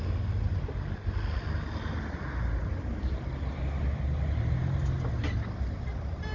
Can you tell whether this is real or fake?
real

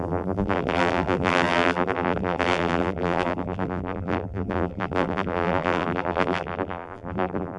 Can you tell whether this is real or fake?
fake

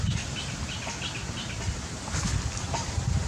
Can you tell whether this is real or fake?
real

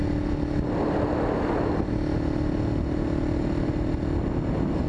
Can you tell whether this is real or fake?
real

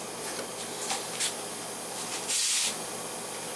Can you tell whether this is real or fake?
real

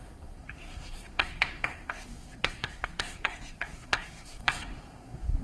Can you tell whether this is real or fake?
fake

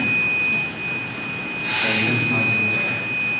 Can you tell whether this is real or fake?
real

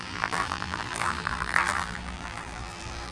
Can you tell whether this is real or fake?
fake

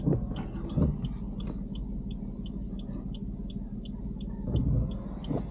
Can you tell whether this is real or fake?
real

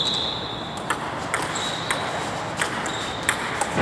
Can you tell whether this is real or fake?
real